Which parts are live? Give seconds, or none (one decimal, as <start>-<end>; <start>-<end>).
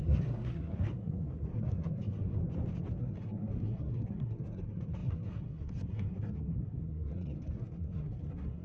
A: 2.4-3.0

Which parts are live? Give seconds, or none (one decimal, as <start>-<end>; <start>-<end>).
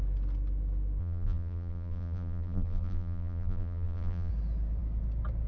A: 0.0-1.0; 4.3-5.5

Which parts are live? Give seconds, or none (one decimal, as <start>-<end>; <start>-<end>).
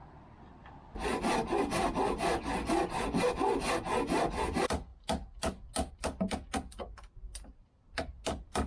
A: 0.0-8.7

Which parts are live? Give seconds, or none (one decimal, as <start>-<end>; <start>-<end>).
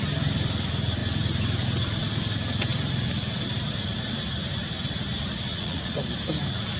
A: 0.0-5.5; 6.0-6.8